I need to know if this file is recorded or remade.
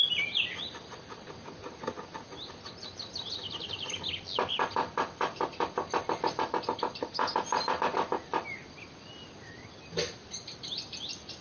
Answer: recorded